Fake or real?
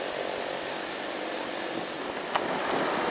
real